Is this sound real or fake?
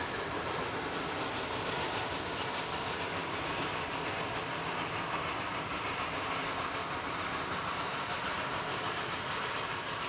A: real